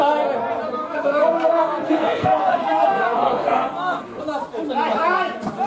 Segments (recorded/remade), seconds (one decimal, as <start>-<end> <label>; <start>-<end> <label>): 0.0-0.8 recorded; 0.8-4.2 remade; 4.2-5.7 recorded